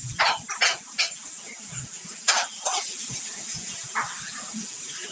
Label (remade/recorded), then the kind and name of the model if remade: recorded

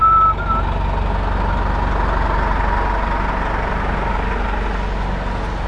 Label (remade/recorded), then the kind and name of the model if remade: recorded